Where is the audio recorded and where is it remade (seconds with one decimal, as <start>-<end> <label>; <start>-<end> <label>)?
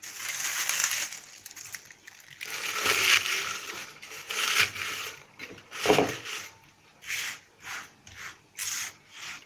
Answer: 0.0-4.7 recorded; 4.7-5.6 remade; 5.6-8.6 recorded; 8.6-9.5 remade